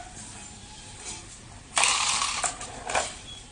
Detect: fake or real real